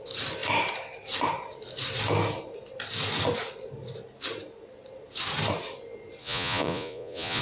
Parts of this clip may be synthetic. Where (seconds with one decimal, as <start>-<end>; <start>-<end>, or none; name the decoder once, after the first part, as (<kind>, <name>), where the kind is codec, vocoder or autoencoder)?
6.2-7.4 (vocoder, Vocos)